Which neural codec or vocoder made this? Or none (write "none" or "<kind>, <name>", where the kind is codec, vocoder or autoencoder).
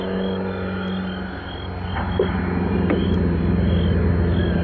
none